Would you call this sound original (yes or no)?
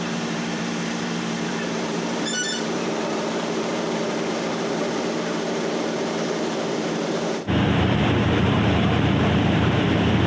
no